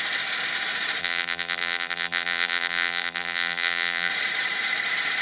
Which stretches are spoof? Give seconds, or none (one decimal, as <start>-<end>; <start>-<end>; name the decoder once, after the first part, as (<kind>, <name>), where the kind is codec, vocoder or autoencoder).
1.0-4.1 (vocoder, BigVGAN v2)